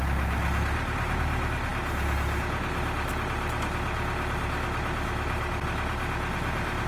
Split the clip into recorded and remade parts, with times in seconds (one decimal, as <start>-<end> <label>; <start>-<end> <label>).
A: 0.0-6.9 recorded